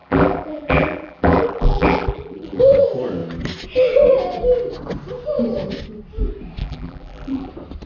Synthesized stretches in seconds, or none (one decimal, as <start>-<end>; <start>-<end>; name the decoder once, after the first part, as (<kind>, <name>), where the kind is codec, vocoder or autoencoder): 0.0-2.6 (vocoder, BigVGAN v2); 6.6-7.5